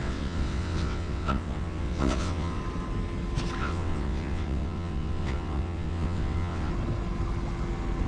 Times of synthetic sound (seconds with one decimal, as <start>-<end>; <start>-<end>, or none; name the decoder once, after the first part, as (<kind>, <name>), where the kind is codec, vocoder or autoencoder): 0.0-2.6 (vocoder, WaveNeXt); 3.6-6.7